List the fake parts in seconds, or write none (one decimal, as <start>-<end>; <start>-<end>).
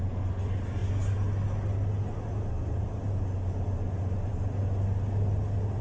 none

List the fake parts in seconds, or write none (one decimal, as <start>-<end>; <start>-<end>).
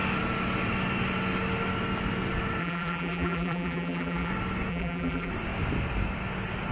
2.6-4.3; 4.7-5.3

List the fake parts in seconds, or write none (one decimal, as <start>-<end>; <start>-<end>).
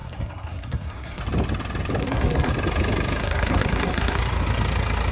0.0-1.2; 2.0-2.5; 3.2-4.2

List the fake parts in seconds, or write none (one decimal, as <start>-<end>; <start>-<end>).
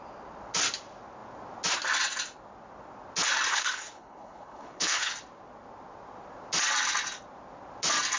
3.5-5.1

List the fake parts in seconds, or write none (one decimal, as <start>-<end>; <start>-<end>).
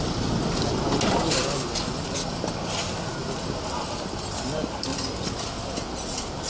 none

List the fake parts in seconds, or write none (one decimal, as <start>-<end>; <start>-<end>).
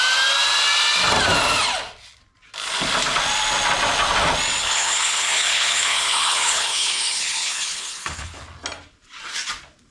4.6-8.4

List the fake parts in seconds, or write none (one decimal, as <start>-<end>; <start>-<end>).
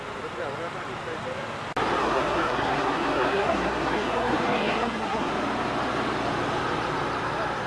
2.0-5.3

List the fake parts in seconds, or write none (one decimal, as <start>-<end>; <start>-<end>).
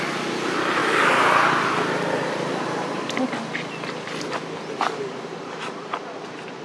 0.8-3.2